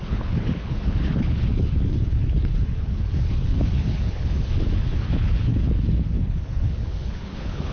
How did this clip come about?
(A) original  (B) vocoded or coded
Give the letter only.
B